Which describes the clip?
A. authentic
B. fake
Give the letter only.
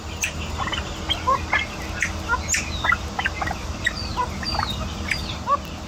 A